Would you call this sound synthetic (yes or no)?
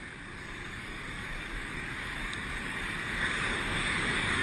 yes